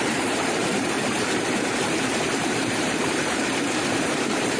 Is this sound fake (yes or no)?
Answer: yes